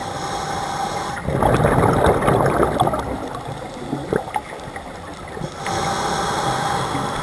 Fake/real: real